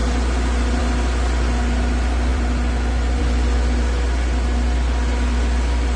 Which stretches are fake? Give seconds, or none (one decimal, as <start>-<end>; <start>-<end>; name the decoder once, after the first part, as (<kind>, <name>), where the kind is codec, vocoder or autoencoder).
2.3-3.2 (vocoder, BigVGAN v2)